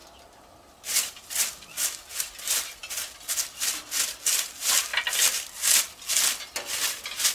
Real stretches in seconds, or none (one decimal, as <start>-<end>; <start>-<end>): 2.2-4.9; 5.8-7.3